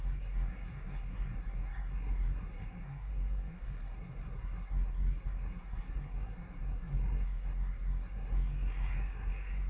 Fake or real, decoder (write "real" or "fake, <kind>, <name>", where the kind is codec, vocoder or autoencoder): fake, codec, SNAC